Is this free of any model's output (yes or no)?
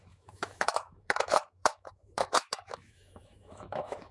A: no